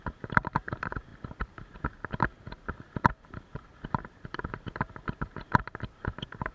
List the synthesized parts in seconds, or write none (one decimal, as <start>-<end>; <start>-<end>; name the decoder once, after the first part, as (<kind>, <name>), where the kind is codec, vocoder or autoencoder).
0.0-6.5 (vocoder, BigVGAN v2)